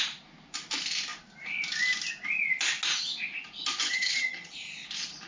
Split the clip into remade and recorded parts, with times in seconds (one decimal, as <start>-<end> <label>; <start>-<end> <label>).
0.0-3.8 recorded; 3.8-4.5 remade; 4.5-5.3 recorded